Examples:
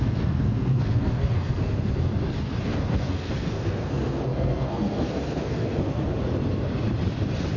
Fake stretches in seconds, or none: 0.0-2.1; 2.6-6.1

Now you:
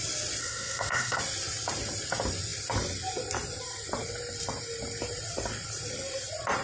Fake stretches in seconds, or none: 0.4-1.2

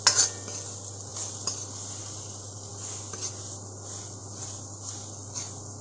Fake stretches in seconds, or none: none

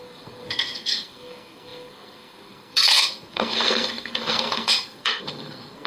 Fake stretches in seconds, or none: 0.0-5.9

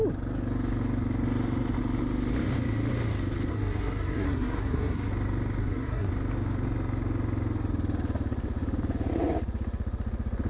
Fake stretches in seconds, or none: 3.5-5.1; 5.6-6.1